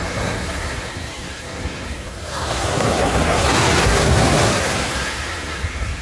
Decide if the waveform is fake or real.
fake